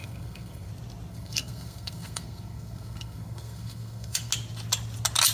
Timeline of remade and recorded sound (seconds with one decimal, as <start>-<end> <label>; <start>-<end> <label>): 0.0-0.7 remade; 0.7-1.1 recorded; 1.1-4.3 remade; 4.3-5.3 recorded